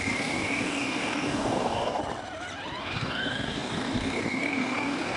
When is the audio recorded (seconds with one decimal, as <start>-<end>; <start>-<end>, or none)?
2.0-2.8